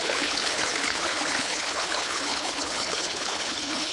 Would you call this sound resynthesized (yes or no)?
yes